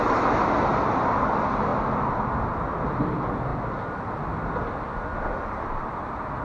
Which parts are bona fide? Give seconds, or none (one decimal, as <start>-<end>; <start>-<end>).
0.0-6.4